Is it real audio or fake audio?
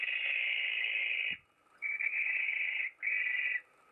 real